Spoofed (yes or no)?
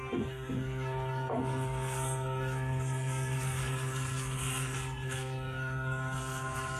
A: yes